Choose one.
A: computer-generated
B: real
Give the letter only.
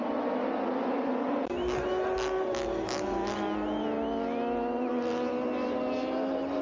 B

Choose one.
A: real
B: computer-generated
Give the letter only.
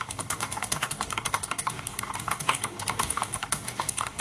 B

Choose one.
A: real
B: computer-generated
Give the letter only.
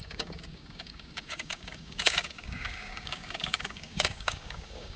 B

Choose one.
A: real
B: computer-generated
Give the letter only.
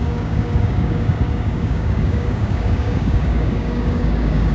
B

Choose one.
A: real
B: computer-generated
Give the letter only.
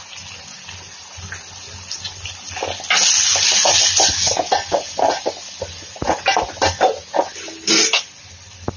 A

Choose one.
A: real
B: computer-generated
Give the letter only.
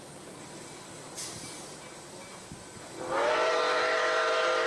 A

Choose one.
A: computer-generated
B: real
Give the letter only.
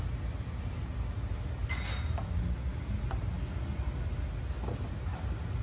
B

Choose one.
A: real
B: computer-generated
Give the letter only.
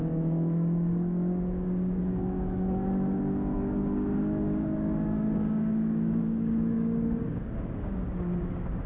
B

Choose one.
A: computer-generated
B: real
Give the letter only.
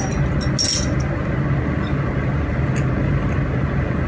B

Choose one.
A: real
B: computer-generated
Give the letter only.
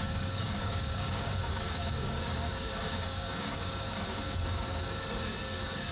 B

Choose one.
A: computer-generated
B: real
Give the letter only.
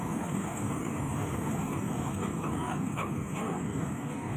A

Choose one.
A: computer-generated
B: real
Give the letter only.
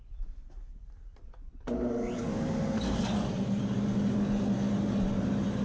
B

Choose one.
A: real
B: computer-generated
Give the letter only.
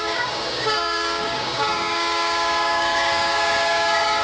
B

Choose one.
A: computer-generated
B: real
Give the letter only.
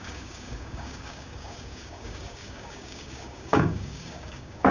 A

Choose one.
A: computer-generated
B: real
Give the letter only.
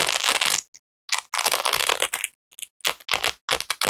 B